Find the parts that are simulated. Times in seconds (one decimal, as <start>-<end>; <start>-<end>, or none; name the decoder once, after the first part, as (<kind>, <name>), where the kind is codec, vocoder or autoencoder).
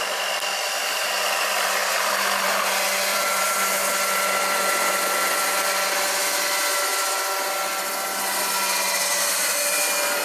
0.8-3.2 (vocoder, BigVGAN v2)